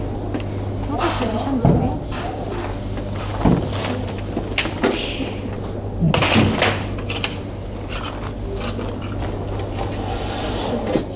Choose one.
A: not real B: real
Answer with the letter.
B